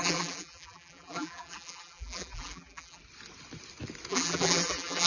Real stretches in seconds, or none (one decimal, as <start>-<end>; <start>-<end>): 3.0-4.1